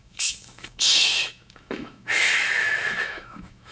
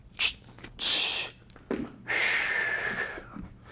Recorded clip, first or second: second